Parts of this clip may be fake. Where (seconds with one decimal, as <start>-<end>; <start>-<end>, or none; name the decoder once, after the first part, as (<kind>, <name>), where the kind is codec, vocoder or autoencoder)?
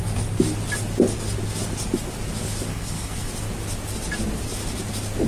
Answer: 2.7-3.3 (codec, SNAC)